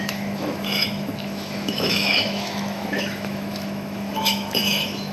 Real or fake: fake